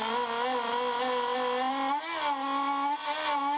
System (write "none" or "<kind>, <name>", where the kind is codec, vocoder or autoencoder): none